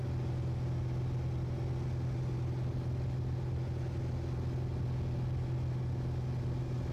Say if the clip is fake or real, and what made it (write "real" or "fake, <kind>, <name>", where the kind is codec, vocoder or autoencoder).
real